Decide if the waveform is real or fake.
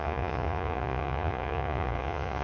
fake